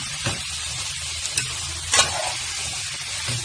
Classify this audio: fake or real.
real